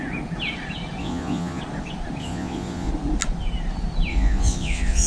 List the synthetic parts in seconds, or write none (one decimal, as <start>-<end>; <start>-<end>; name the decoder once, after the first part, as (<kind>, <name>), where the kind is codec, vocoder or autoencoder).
1.0-1.6 (vocoder, Vocos); 2.2-2.9; 4.1-5.1